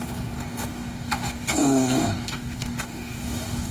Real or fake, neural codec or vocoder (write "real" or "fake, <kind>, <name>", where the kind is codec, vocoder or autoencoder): fake, codec, DAC